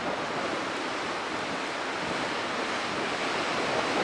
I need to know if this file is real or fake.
real